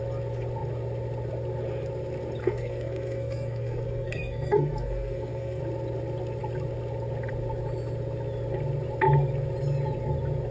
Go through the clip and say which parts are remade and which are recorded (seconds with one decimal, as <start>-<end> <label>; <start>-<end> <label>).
0.0-2.4 recorded; 2.4-5.6 remade; 5.6-10.5 recorded